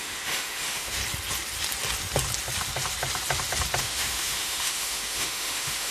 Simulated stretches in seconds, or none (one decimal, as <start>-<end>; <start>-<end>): 0.0-1.0; 3.8-5.9